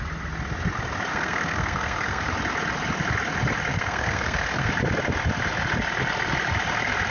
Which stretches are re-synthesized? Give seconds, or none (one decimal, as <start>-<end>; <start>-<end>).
1.1-2.3; 3.7-4.7